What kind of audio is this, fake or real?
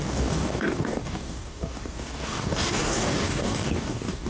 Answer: fake